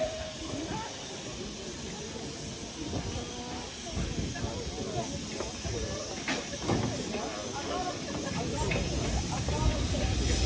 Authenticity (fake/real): real